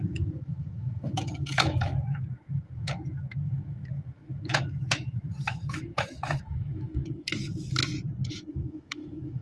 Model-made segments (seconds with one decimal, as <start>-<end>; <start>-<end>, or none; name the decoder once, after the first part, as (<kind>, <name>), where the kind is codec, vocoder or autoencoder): 0.0-7.8 (autoencoder, DAC-VAE); 8.3-9.4